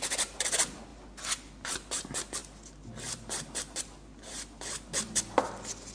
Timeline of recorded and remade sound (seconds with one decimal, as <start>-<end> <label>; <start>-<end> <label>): 0.0-5.9 recorded